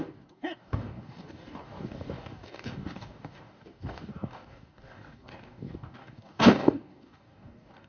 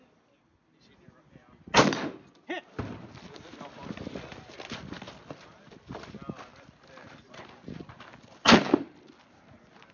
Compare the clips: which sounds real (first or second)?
second